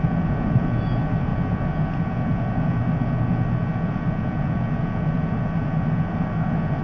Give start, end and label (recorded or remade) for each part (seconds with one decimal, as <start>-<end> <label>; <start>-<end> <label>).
0.0-6.8 recorded